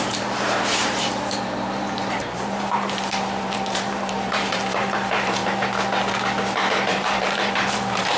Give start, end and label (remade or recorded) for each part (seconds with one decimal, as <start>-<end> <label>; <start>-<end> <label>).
0.0-5.4 remade; 5.4-6.7 recorded; 6.7-8.2 remade